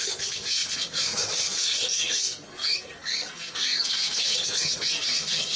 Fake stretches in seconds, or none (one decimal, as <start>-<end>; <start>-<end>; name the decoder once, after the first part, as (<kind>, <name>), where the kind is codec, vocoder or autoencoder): 0.0-5.6 (codec, SNAC)

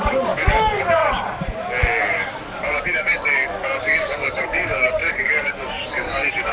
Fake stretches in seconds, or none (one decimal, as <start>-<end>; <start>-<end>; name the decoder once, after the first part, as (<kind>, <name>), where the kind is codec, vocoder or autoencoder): 0.0-1.0 (codec, DAC); 1.8-6.5

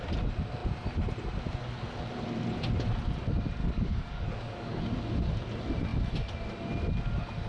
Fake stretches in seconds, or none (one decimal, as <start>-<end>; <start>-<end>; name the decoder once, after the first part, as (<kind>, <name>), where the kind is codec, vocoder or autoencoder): 3.6-4.8 (codec, DAC)

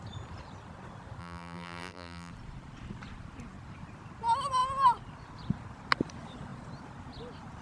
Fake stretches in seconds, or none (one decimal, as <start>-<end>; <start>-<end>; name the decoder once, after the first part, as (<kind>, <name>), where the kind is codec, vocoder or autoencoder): 1.2-2.3 (vocoder, BigVGAN v2)

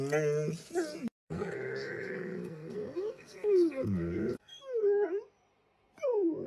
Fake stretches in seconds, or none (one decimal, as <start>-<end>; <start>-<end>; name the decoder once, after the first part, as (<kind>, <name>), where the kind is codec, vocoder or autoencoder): 1.2-5.1 (codec, SNAC)

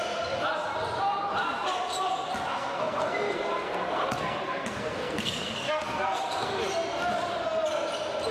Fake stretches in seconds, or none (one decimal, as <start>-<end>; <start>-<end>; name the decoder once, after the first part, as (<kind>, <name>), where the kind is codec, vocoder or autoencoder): 2.5-6.6 (codec, SNAC)